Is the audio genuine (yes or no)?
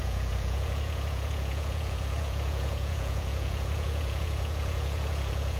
no